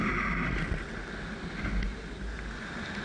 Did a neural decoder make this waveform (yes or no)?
no